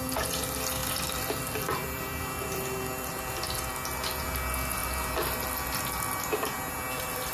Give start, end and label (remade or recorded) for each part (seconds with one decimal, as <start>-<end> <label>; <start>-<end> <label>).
0.0-0.8 recorded; 0.8-3.7 remade; 3.7-7.3 recorded